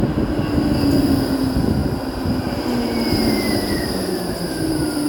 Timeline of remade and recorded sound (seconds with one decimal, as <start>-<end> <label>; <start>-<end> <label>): 0.0-1.8 recorded; 1.8-5.1 remade